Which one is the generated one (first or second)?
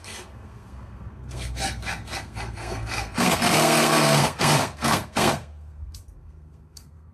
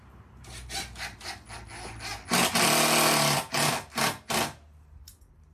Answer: first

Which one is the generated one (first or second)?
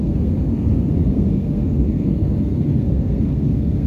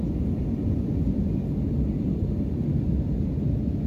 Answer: first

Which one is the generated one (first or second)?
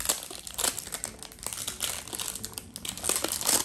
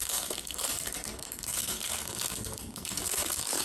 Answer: second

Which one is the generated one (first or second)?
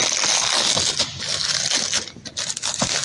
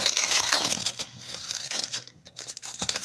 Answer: second